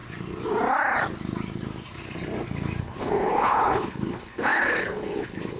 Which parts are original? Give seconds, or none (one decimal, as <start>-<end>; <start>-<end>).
0.0-2.8